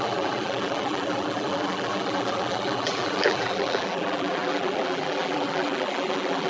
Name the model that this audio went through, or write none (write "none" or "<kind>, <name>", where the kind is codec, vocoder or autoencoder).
vocoder, BigVGAN v2